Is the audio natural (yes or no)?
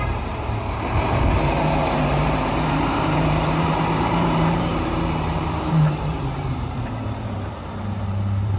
no